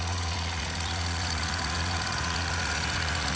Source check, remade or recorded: remade